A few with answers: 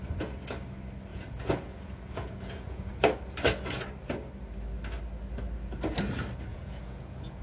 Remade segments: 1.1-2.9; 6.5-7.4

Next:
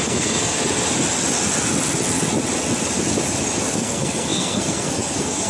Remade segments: 0.0-0.6; 3.7-5.5

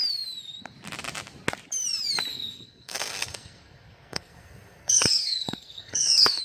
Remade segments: 2.3-6.4

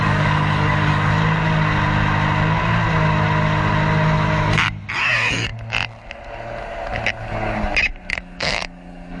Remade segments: 0.0-1.2; 4.9-5.5; 8.1-9.2

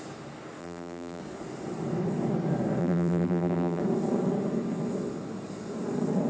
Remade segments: 0.6-1.2; 2.8-3.8

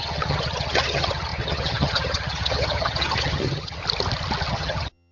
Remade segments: 0.0-3.8; 4.5-5.1

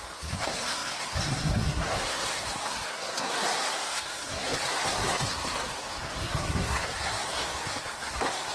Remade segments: 0.0-8.5

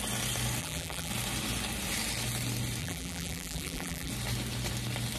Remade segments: 0.6-1.1; 2.8-4.1